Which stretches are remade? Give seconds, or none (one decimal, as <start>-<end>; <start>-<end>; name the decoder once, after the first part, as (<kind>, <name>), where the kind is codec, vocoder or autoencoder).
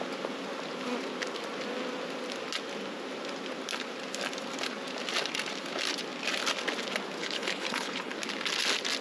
7.2-8.1 (codec, HILCodec)